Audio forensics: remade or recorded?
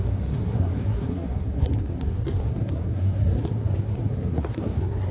remade